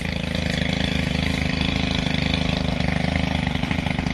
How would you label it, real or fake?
real